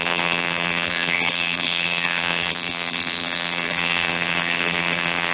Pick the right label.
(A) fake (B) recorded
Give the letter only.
A